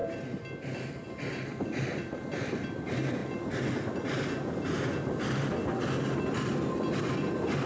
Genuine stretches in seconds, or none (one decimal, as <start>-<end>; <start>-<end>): 0.0-7.7